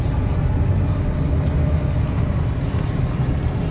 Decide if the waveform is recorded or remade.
recorded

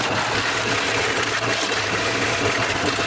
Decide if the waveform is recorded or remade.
recorded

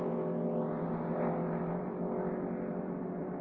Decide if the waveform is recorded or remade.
recorded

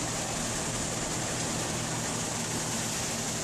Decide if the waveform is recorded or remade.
recorded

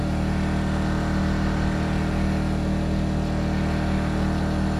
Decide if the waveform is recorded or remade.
recorded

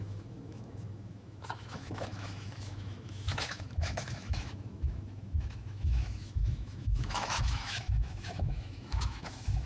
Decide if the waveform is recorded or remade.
remade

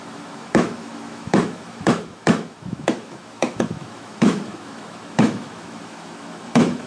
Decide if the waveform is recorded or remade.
remade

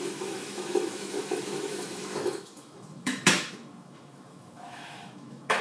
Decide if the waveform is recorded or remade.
remade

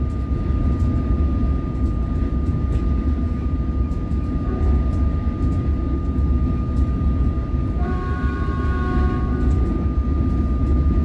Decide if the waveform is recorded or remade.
recorded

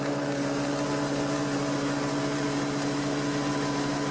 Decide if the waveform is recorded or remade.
recorded